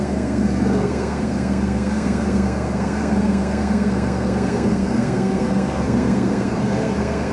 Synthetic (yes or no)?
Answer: yes